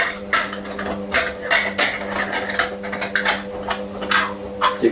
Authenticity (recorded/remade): recorded